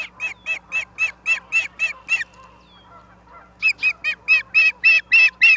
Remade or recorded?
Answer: recorded